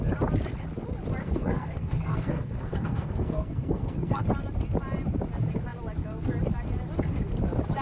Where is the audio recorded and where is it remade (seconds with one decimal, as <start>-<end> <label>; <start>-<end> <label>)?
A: 0.0-1.2 recorded; 1.2-4.2 remade; 4.2-7.8 recorded